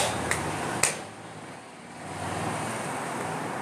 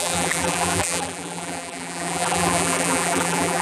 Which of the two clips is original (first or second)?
first